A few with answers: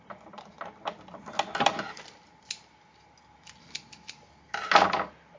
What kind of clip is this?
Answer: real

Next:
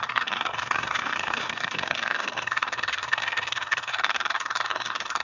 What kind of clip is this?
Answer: fake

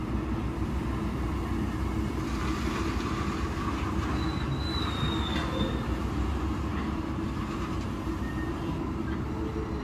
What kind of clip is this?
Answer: real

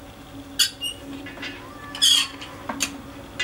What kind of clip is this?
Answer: real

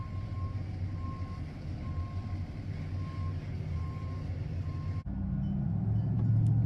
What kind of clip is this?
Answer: real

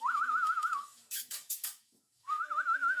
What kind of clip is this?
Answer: fake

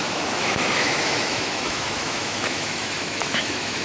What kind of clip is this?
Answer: fake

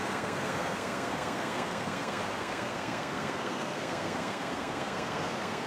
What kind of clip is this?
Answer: fake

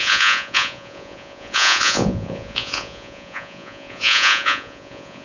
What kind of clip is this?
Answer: fake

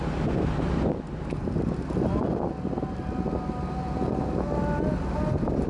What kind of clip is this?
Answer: real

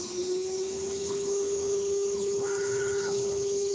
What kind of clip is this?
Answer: fake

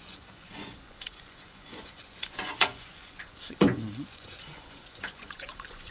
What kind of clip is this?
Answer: fake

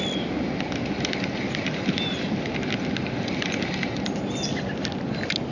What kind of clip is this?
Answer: real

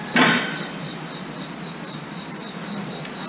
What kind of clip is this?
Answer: fake